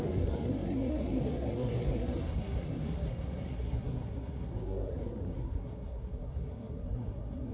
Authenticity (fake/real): fake